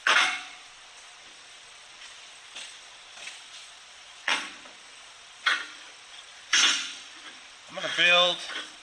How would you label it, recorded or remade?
remade